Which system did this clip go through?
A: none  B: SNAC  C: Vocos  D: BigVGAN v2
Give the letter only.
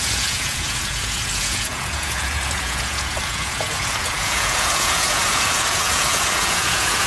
C